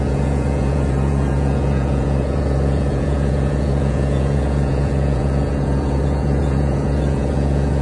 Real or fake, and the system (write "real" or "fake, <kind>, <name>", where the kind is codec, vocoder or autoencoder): fake, vocoder, Vocos